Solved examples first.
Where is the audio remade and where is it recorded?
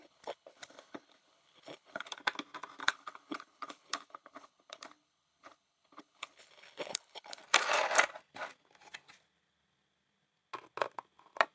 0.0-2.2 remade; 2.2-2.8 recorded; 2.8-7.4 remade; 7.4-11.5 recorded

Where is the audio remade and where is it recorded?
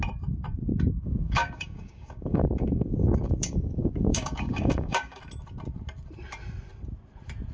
0.0-0.7 recorded; 0.7-5.2 remade; 5.2-7.5 recorded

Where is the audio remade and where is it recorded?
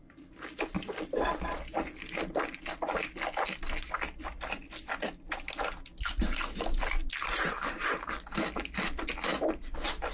0.0-10.1 recorded